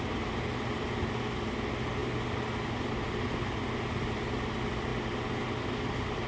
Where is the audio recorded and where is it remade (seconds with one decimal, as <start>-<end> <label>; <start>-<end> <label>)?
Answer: 0.0-6.3 recorded